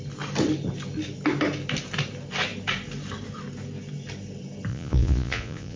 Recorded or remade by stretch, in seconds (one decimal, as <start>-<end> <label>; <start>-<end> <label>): 0.0-4.7 recorded; 4.7-5.8 remade